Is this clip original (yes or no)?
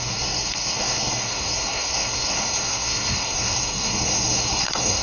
no